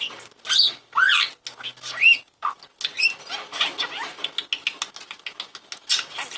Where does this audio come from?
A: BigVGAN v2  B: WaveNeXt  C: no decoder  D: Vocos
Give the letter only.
C